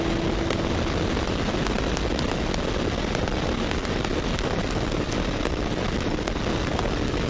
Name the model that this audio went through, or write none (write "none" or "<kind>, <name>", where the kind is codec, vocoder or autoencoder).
none